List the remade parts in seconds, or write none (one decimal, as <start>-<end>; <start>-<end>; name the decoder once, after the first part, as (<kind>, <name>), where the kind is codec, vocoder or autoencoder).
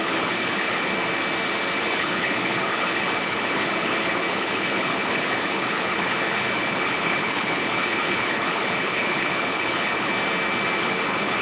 0.0-0.9 (codec, HILCodec); 1.8-10.1; 10.8-11.4